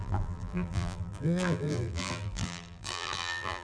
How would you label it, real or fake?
fake